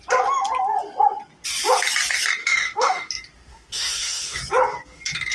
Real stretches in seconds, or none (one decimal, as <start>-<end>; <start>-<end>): 0.0-2.4; 3.1-3.5; 4.4-5.3